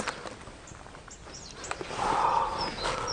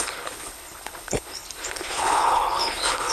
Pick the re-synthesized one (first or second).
second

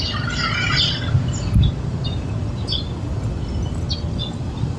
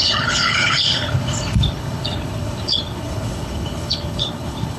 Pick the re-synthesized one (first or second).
second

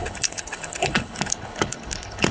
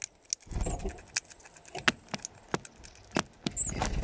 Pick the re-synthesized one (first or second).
first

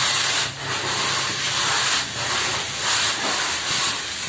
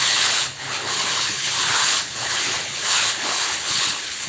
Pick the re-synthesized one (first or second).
second